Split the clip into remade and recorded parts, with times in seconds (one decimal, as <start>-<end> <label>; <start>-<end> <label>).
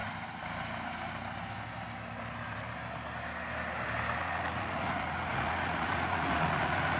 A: 0.0-4.2 recorded; 4.2-7.0 remade